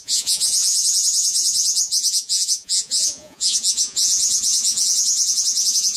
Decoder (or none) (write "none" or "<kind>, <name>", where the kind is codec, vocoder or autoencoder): vocoder, Vocos